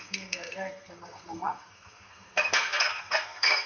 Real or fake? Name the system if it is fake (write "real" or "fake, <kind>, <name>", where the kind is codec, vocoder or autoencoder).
fake, codec, SNAC